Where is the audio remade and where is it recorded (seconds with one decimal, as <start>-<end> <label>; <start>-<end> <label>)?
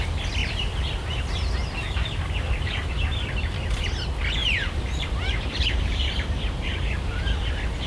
0.0-0.4 recorded; 0.4-1.3 remade; 1.3-1.8 recorded; 1.8-3.9 remade; 3.9-4.4 recorded; 4.4-7.2 remade; 7.2-7.9 recorded